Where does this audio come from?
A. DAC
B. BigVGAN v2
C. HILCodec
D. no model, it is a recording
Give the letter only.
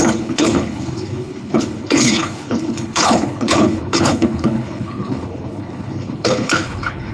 C